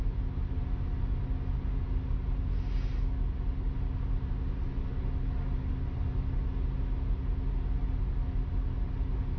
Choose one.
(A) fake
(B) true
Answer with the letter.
B